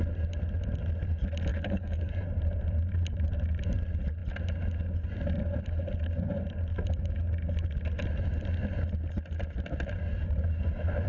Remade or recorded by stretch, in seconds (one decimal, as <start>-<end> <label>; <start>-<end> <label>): 0.0-1.5 recorded; 1.5-2.1 remade; 2.1-11.1 recorded